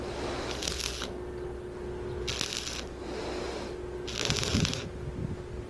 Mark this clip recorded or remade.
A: recorded